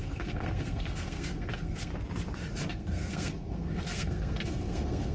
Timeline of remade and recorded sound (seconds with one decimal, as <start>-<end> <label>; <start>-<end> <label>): 0.0-1.9 remade; 1.9-2.7 recorded; 2.7-5.1 remade